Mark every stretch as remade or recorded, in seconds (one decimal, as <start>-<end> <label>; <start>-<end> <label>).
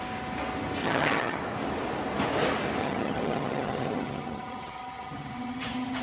0.0-0.8 recorded; 0.8-1.4 remade; 1.4-2.8 recorded; 2.8-6.0 remade